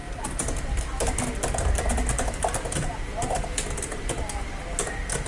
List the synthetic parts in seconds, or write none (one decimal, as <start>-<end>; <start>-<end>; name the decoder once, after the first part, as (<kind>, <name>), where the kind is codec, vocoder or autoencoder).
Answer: 0.0-0.8 (vocoder, BigVGAN v2); 1.9-4.5